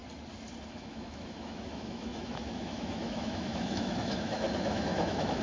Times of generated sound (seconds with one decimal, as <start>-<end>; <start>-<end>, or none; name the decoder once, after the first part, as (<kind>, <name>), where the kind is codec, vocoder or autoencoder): 0.7-5.4 (autoencoder, DAC-VAE)